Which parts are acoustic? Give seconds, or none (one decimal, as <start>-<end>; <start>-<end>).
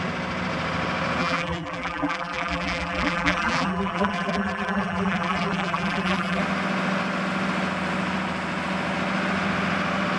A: 0.0-1.2; 6.4-10.2